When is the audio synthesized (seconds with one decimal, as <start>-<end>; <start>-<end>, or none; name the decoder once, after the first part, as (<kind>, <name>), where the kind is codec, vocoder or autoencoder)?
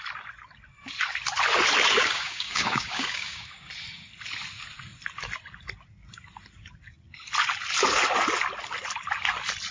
2.0-3.7 (codec, DAC)